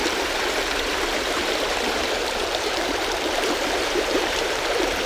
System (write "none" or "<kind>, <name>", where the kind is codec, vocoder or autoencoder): vocoder, BigVGAN v2